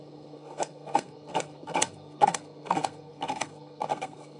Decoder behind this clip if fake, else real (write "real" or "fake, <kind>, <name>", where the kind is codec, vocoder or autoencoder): fake, codec, SNAC